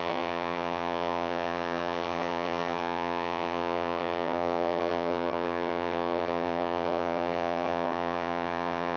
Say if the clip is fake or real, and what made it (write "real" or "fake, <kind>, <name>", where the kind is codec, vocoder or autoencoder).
fake, vocoder, HiFi-GAN